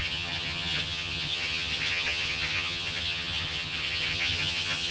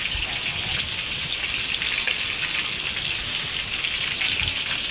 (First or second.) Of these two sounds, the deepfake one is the first